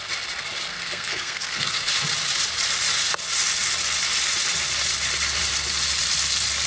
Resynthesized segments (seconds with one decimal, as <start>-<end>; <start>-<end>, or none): 0.7-1.9